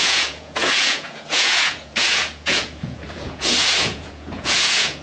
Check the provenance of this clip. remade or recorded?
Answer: remade